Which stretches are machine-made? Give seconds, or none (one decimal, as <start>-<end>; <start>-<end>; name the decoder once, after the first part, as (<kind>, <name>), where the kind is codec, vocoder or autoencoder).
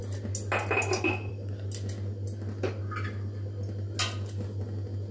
none